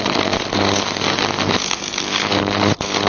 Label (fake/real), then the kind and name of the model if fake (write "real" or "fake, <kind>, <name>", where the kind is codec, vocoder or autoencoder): real